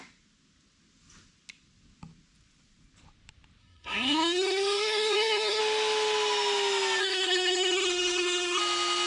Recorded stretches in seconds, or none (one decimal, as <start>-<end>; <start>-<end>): 0.0-3.6; 5.6-7.0; 8.6-9.1